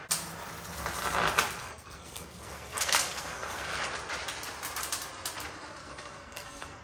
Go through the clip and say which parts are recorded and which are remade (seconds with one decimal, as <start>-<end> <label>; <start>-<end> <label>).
0.0-1.6 recorded; 1.6-3.8 remade; 3.8-5.8 recorded; 5.8-6.8 remade